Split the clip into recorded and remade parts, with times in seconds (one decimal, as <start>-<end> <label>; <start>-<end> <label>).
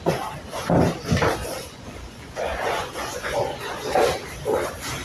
0.0-1.4 recorded; 1.4-3.8 remade; 3.8-5.0 recorded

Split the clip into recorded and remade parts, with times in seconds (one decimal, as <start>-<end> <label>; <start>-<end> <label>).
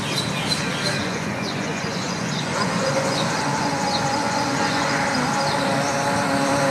0.0-1.0 recorded; 1.0-5.0 remade; 5.0-6.7 recorded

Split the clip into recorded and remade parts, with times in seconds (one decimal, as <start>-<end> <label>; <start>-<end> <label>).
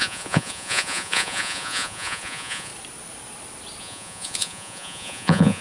0.0-2.7 remade; 2.7-3.8 recorded; 3.8-5.6 remade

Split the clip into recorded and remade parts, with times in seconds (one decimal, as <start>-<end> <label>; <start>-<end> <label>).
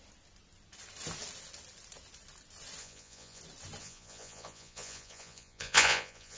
0.0-2.8 recorded; 2.8-3.4 remade; 3.4-3.8 recorded; 3.8-6.4 remade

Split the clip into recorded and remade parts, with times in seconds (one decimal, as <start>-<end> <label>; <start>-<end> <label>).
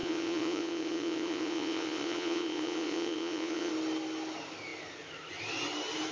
0.0-3.7 remade; 3.7-6.1 recorded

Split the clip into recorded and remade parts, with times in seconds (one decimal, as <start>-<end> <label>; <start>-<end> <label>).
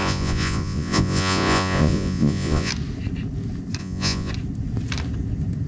0.0-2.7 remade; 2.7-3.8 recorded; 3.8-4.3 remade; 4.3-5.7 recorded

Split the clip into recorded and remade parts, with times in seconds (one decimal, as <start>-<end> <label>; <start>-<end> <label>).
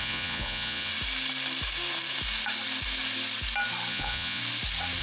0.0-0.9 remade; 0.9-3.9 recorded; 3.9-4.4 remade; 4.4-5.0 recorded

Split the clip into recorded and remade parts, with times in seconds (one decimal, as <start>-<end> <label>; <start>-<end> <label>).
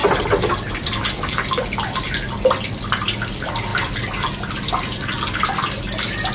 0.0-6.3 recorded